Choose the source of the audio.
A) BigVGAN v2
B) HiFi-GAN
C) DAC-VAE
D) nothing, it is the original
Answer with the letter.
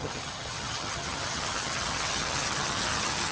B